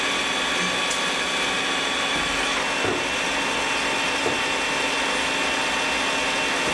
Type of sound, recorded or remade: recorded